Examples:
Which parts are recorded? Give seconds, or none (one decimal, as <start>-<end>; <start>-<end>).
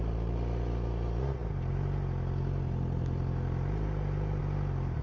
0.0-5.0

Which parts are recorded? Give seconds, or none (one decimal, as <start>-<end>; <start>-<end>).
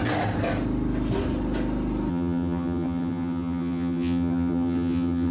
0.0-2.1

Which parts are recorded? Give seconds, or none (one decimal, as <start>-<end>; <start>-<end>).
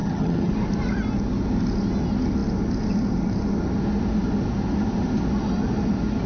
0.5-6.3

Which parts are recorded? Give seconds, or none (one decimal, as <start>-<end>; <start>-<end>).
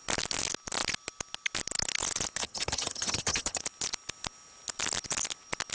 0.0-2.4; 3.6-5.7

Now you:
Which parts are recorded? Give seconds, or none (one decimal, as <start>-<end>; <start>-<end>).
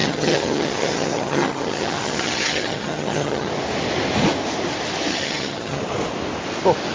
3.5-5.1; 5.8-6.9